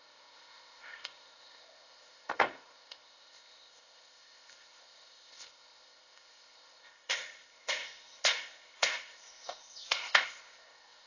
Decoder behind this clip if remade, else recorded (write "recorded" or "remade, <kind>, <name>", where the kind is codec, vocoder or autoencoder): remade, codec, ZipCodec